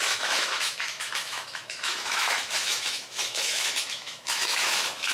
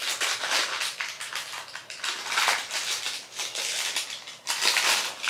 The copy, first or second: first